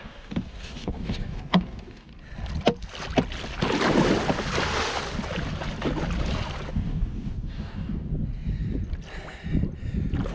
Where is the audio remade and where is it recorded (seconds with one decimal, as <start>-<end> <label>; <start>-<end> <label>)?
0.0-2.1 remade; 2.1-6.7 recorded; 6.7-8.1 remade; 8.1-10.3 recorded